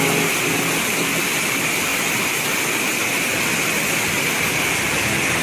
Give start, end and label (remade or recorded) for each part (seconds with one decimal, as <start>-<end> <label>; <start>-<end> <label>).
0.0-5.4 recorded